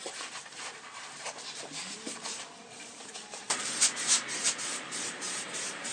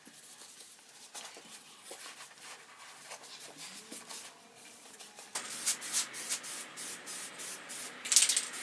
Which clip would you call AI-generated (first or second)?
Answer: first